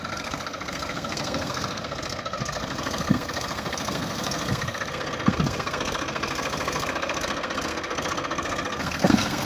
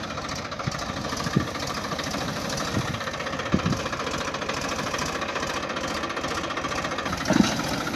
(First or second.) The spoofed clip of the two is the first